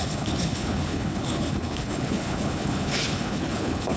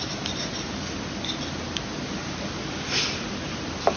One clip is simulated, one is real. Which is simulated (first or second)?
first